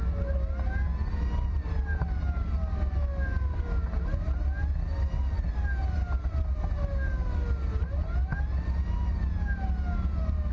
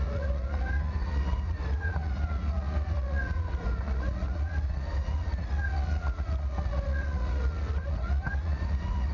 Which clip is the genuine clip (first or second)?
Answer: first